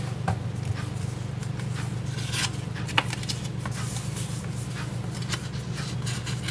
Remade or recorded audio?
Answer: recorded